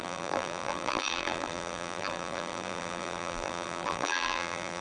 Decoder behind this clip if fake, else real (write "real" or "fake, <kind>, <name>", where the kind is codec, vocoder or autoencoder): fake, vocoder, BigVGAN v2